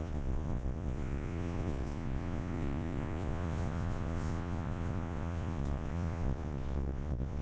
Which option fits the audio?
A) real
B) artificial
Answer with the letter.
B